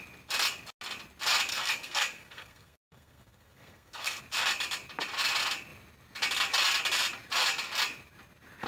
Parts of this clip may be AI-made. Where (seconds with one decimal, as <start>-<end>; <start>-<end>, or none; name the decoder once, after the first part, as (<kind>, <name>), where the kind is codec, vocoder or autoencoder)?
1.5-4.2 (codec, SNAC)